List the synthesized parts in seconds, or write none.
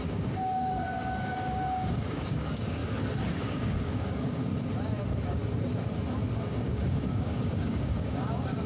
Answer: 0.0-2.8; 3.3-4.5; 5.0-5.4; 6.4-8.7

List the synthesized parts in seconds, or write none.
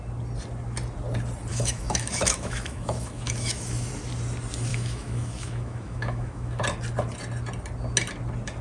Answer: 1.5-3.9; 4.7-6.6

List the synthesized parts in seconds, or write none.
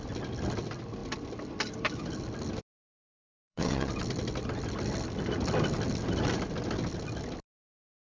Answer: 3.2-3.9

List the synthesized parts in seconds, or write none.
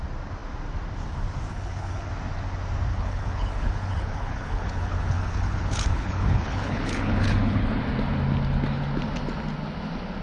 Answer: 1.5-2.1; 2.9-7.8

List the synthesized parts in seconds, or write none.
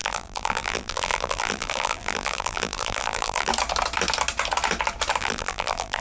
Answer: 0.0-3.5; 5.2-6.0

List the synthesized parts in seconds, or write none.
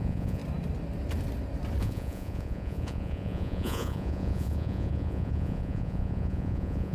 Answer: 0.0-0.4; 1.8-6.9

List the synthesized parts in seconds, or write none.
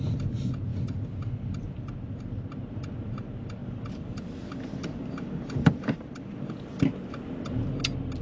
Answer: 3.6-6.5